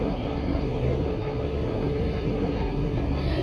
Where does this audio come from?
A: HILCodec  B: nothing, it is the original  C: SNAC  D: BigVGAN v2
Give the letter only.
C